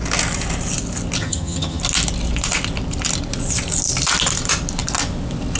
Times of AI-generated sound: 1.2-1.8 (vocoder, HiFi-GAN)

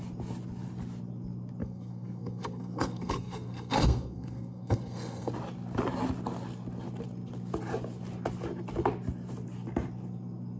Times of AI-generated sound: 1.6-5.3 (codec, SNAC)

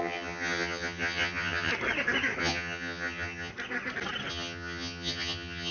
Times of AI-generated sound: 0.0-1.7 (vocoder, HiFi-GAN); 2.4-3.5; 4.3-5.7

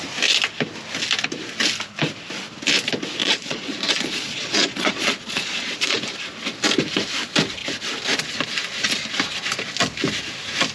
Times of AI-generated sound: 3.2-6.0 (vocoder, Vocos)

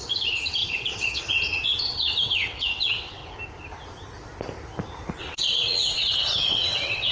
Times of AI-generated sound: 0.0-3.2 (vocoder, WaveNeXt); 5.2-7.1